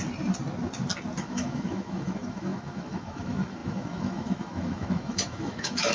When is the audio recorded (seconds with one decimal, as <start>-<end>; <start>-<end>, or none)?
0.0-1.2